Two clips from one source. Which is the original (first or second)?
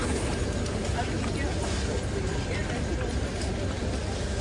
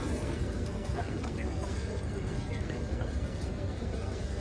first